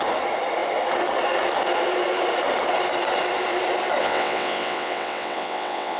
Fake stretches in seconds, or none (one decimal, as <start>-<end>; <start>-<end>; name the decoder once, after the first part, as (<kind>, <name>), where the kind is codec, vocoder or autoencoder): 4.0-6.0 (vocoder, WaveNeXt)